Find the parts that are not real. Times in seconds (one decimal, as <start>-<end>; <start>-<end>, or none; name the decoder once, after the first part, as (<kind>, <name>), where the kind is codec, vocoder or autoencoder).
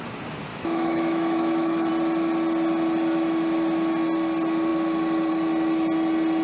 0.5-1.9 (autoencoder, DAC-VAE)